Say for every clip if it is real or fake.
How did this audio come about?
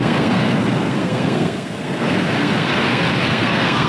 fake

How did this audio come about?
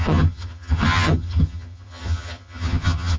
fake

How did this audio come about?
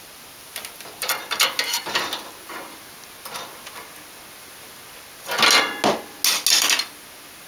real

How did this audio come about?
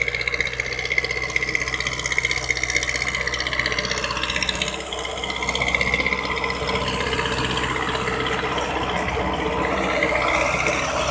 real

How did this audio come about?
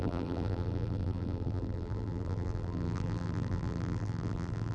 fake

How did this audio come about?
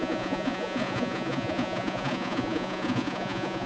fake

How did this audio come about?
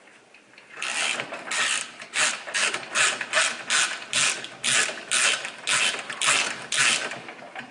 real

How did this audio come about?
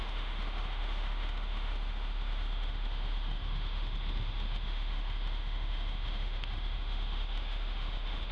fake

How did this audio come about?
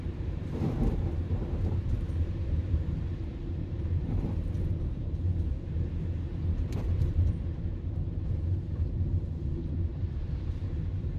fake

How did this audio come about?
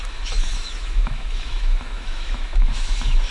fake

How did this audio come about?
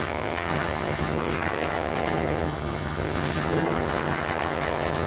fake